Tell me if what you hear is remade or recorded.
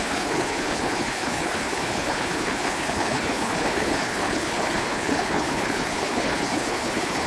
remade